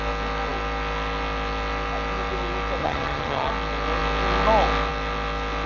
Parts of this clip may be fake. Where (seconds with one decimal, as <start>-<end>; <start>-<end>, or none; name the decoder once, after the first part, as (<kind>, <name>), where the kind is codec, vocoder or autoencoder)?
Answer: 2.8-3.5 (vocoder, HiFi-GAN)